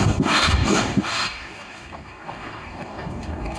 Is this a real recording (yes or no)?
no